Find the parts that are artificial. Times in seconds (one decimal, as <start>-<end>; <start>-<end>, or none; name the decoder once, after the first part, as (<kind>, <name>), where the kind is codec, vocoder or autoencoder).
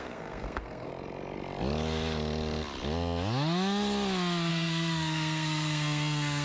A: 0.0-0.9 (codec, SNAC); 4.5-6.4